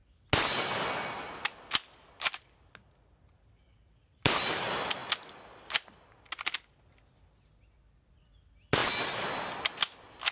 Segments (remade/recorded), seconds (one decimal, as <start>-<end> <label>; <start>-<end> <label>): 0.0-10.3 recorded